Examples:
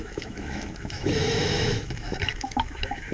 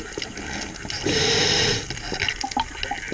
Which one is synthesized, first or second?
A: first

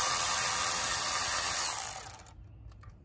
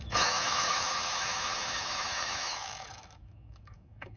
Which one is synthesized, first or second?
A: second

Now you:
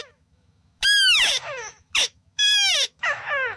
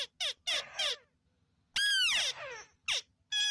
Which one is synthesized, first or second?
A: first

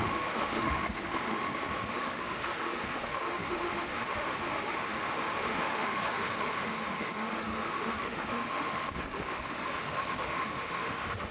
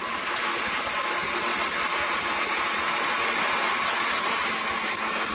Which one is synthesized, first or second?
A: first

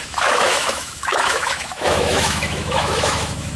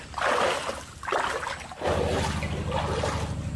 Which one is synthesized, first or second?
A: first